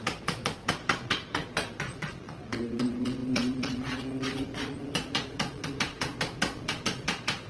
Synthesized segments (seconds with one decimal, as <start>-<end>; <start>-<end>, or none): 0.0-7.5